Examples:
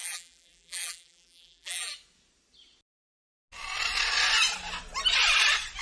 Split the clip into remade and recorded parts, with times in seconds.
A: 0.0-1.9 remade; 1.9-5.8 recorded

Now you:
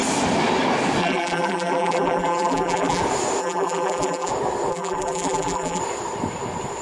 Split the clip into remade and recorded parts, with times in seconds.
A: 0.0-1.0 recorded; 1.0-3.0 remade; 3.0-3.4 recorded; 3.4-4.3 remade; 4.3-4.7 recorded; 4.7-5.8 remade; 5.8-6.8 recorded